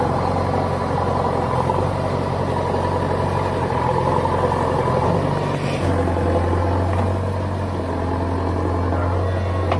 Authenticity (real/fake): real